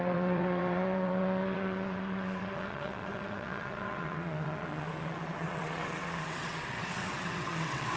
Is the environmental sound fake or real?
fake